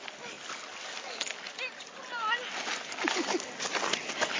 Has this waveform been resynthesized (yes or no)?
no